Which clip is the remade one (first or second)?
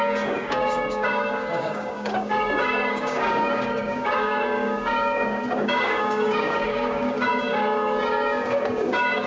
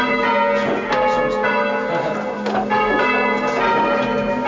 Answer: first